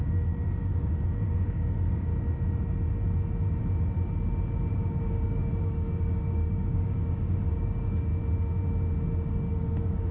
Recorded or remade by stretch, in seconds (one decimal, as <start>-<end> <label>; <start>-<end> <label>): 0.0-2.1 remade; 2.1-4.7 recorded; 4.7-8.1 remade; 8.1-9.3 recorded; 9.3-10.1 remade